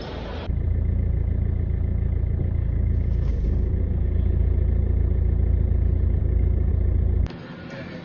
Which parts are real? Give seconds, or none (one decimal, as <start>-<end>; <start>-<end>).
0.0-2.6; 4.1-6.2; 6.7-8.0